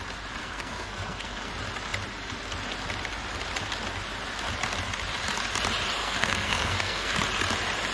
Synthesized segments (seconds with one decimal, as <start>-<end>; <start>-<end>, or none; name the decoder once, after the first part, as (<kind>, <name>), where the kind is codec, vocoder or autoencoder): 0.4-1.5 (codec, SNAC); 6.0-7.2